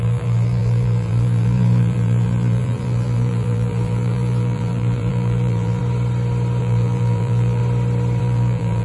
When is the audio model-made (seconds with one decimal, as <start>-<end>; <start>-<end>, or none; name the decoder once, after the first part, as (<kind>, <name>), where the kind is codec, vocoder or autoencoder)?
0.0-5.8 (vocoder, BigVGAN v2); 6.6-7.6; 8.2-8.8